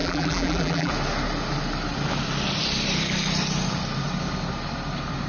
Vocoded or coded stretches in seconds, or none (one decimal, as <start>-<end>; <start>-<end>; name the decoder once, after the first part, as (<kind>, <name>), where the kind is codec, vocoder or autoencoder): 0.0-0.9 (vocoder, BigVGAN v2)